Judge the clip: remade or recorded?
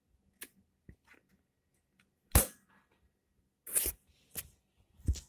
recorded